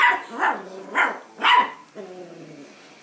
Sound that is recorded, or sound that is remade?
recorded